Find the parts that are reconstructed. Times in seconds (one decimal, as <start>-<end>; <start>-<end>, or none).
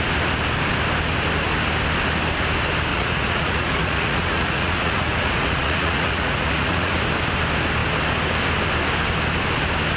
2.9-7.0